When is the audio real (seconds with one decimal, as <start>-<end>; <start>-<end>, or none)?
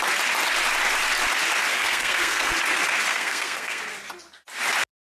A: 0.0-1.7; 2.5-3.1; 3.8-5.1